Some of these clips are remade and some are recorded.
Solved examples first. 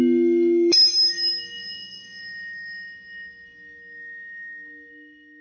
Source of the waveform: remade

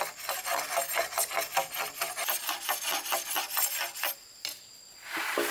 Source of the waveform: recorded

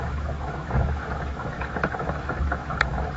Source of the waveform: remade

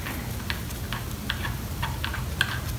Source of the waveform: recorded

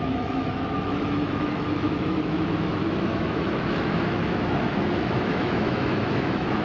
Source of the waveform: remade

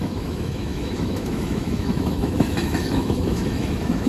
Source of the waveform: remade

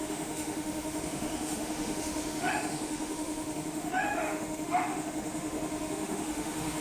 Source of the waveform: remade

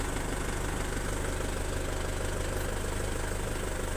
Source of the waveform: recorded